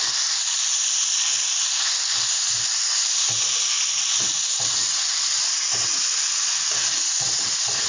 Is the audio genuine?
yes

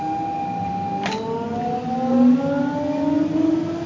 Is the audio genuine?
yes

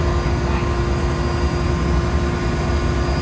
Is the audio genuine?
yes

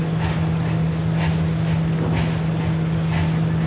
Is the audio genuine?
yes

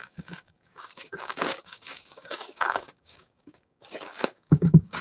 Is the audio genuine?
no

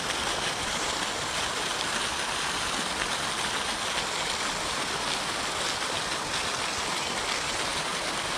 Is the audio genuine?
yes